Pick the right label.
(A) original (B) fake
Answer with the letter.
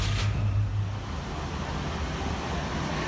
A